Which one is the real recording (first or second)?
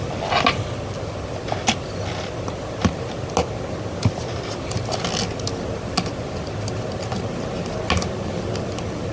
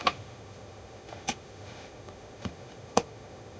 first